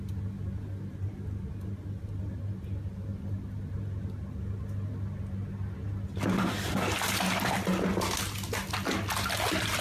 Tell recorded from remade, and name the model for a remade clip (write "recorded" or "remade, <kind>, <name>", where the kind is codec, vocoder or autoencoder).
recorded